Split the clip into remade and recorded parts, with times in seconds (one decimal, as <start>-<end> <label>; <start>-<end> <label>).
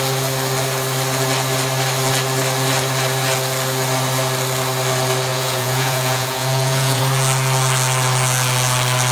0.0-5.3 recorded; 5.3-7.0 remade; 7.0-9.1 recorded